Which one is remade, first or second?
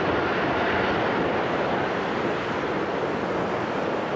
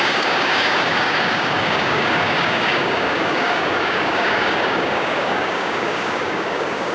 second